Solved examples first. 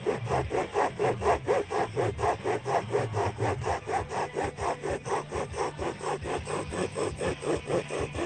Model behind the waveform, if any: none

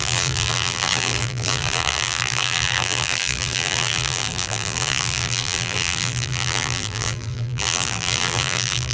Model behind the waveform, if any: vocoder, BigVGAN v2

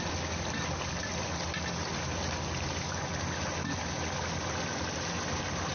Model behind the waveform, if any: none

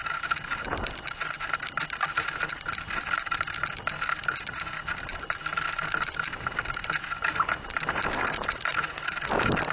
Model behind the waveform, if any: none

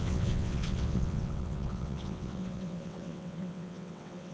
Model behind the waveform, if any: vocoder, WaveNeXt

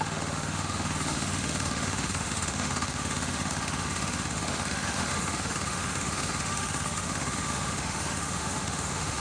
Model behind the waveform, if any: autoencoder, DAC-VAE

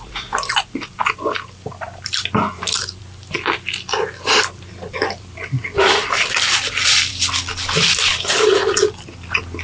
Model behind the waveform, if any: vocoder, BigVGAN v2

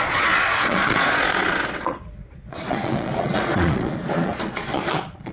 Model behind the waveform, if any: vocoder, Vocos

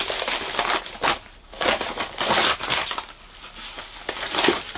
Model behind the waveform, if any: none